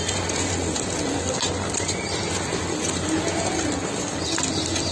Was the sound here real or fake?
real